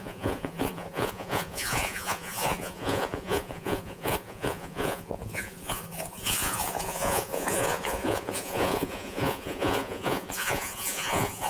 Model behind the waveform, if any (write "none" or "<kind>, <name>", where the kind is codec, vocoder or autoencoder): vocoder, Vocos